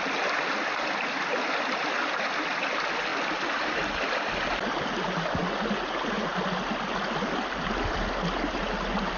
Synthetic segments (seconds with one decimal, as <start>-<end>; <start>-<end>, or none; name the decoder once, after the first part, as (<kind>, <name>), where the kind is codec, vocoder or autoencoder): none